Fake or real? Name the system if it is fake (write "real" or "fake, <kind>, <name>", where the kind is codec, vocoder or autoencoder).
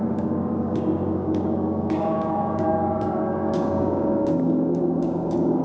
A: fake, codec, DAC